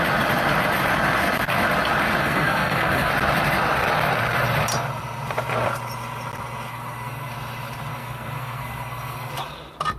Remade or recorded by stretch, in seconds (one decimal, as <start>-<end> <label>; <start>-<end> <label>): 0.0-2.2 recorded; 2.2-3.1 remade; 3.1-6.7 recorded; 6.7-7.3 remade; 7.3-7.9 recorded; 7.9-9.3 remade; 9.3-10.0 recorded